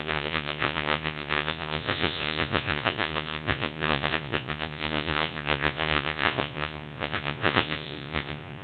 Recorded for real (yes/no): no